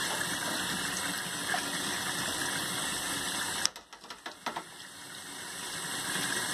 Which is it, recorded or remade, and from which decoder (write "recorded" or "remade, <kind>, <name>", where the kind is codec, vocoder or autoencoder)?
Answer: recorded